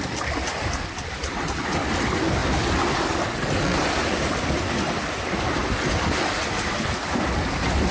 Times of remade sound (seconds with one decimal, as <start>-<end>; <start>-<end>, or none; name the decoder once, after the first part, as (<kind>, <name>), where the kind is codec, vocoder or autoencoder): none